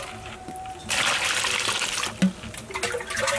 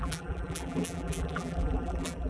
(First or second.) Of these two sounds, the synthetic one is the second